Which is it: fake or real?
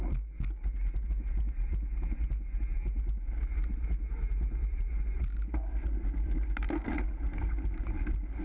real